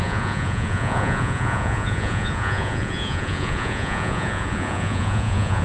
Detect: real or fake fake